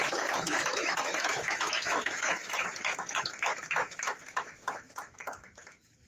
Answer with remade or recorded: remade